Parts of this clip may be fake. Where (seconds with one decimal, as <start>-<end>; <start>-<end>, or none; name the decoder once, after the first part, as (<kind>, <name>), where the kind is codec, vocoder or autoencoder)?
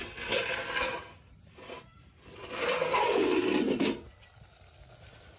1.9-5.4 (vocoder, BigVGAN v2)